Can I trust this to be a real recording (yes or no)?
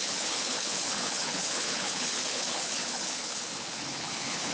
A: no